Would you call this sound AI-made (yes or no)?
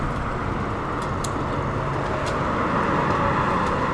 no